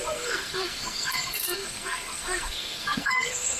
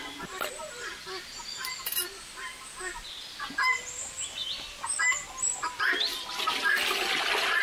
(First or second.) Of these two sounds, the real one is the second